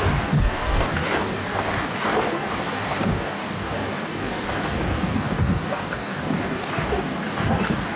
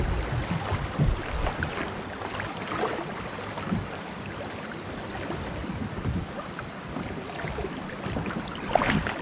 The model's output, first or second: first